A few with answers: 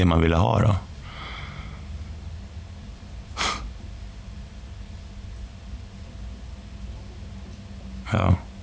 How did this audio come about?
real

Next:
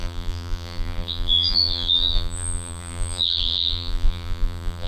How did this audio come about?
fake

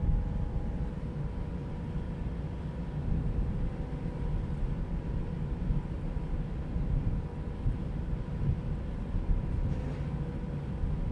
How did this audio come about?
fake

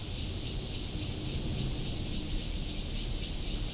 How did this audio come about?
real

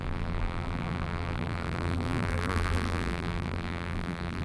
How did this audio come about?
fake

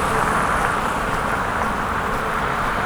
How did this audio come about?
fake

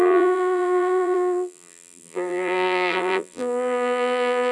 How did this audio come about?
fake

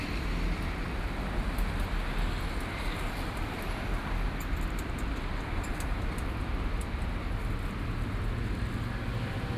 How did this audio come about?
real